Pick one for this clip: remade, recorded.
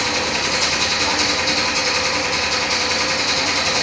recorded